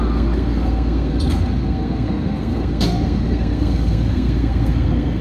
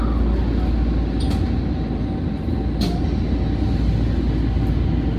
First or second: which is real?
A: second